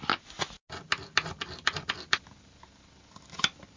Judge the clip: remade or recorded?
recorded